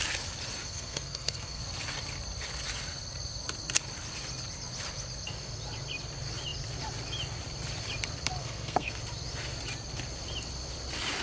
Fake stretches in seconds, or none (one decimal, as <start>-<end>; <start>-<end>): 0.6-1.6; 8.4-9.0